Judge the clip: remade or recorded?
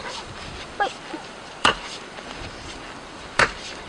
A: remade